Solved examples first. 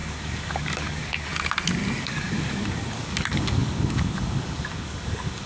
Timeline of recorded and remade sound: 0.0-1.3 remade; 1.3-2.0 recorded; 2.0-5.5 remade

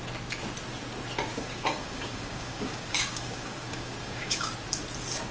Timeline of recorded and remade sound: 0.0-1.3 recorded; 1.3-4.5 remade; 4.5-5.3 recorded

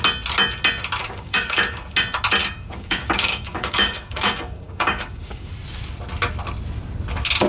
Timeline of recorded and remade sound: 0.0-1.0 recorded; 1.0-1.8 remade; 1.8-2.4 recorded; 2.4-5.5 remade; 5.5-7.5 recorded

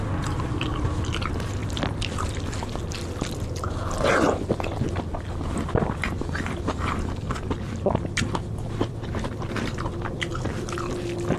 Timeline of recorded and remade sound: 0.0-11.4 recorded

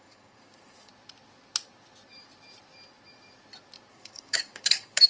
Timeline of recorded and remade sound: 0.0-0.9 remade; 0.9-3.9 recorded; 3.9-5.1 remade